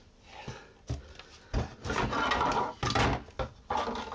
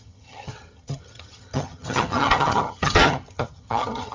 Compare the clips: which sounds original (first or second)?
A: first